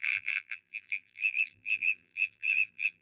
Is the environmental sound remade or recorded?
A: remade